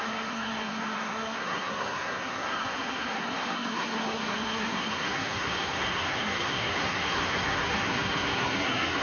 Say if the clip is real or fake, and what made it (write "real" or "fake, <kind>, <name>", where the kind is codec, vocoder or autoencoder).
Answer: fake, codec, SNAC